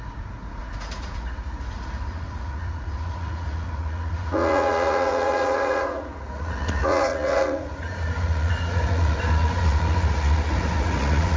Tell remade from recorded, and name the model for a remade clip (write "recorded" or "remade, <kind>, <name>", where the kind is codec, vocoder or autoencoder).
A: remade, vocoder, Vocos